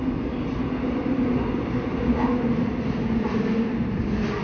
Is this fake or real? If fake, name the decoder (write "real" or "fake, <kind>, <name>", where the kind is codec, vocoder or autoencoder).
real